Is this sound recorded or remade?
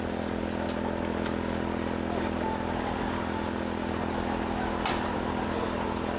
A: recorded